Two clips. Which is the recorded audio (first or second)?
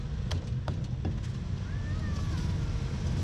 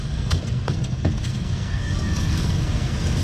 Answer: first